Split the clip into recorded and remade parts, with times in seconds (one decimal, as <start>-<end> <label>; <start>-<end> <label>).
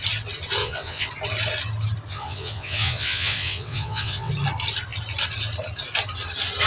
0.0-0.6 recorded; 0.6-1.1 remade; 1.1-2.1 recorded; 2.1-4.3 remade; 4.3-6.7 recorded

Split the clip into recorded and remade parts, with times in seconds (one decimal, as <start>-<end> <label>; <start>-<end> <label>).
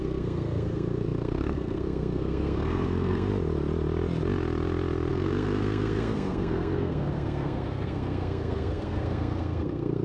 0.0-3.3 remade; 3.3-5.1 recorded; 5.1-10.0 remade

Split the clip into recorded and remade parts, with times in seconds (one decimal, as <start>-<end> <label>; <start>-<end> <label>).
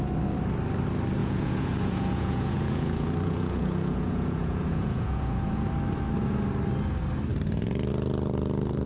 0.0-1.2 recorded; 1.2-5.7 remade; 5.7-8.9 recorded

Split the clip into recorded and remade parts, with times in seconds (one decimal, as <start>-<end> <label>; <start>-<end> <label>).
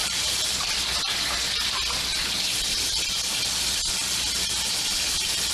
0.0-0.7 remade; 0.7-2.1 recorded; 2.1-5.5 remade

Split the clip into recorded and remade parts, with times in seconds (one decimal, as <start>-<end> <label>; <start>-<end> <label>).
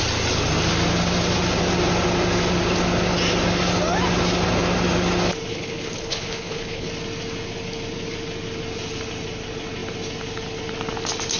0.0-5.5 recorded; 5.5-6.9 remade; 6.9-11.4 recorded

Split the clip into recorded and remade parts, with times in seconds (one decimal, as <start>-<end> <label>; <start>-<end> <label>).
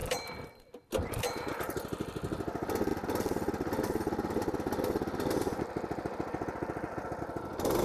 0.0-0.7 remade; 0.7-7.8 recorded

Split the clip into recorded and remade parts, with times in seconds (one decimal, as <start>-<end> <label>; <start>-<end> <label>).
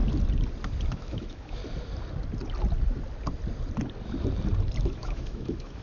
0.0-0.9 recorded; 0.9-1.6 remade; 1.6-4.9 recorded; 4.9-5.8 remade